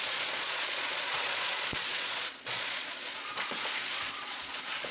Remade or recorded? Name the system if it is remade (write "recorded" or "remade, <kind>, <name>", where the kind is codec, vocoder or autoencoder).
remade, vocoder, Vocos